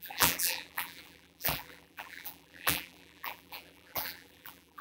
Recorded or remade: remade